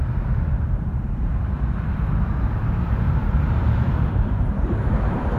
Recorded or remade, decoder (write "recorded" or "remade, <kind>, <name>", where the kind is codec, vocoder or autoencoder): remade, vocoder, BigVGAN v2